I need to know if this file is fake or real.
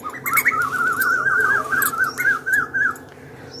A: real